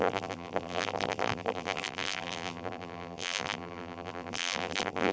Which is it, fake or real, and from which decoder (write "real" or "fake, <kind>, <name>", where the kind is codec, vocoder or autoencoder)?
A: fake, vocoder, BigVGAN v2